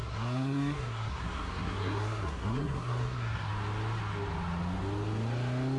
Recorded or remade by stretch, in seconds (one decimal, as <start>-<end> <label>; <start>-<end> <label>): 0.0-3.5 remade; 3.5-5.8 recorded